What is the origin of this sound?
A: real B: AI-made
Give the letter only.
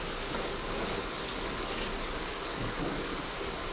B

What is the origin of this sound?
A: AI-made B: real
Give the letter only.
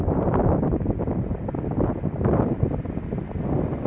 B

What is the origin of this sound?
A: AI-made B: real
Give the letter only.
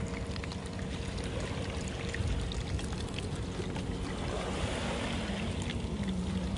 B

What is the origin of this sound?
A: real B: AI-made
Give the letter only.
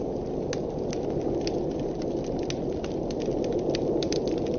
A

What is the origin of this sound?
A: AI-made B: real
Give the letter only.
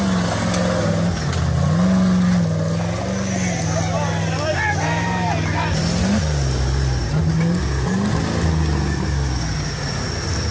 B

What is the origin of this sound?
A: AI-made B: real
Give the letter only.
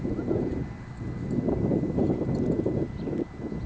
B